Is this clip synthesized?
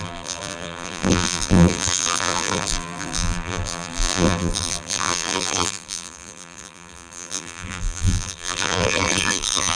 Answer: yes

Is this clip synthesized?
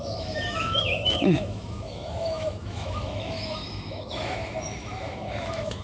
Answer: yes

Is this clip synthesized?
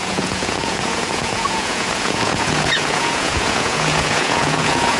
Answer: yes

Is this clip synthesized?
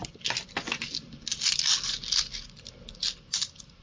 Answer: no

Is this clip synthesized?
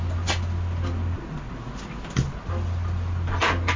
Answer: no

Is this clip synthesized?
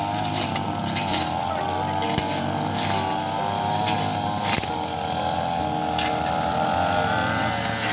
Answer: no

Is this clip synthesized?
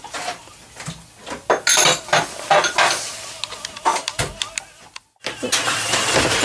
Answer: no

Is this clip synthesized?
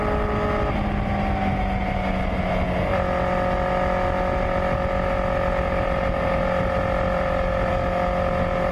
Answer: no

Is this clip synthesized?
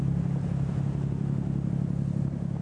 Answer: no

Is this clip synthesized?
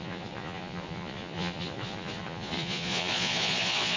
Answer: yes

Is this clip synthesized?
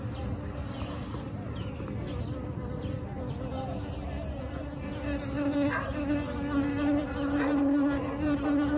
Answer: no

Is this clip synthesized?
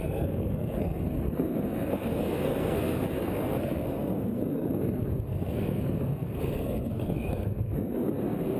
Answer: yes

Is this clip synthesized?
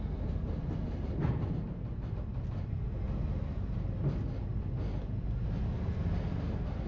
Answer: no